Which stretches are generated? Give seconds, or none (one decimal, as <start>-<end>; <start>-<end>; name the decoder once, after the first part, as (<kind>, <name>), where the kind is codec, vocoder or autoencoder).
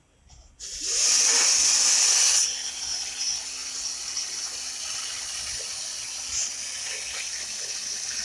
none